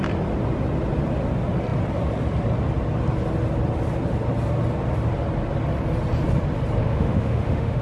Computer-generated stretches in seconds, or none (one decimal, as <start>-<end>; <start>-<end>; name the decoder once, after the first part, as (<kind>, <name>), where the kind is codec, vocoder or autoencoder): 6.8-7.8 (autoencoder, DAC-VAE)